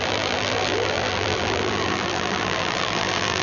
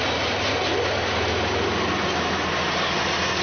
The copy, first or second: first